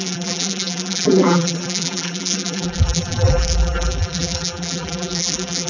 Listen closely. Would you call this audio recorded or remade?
remade